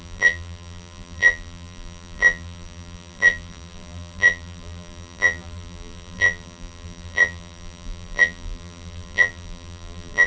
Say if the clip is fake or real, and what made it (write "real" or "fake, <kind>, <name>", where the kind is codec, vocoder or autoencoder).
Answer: fake, vocoder, BigVGAN v2